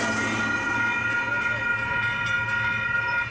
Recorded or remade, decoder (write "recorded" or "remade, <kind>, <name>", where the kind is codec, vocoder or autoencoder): recorded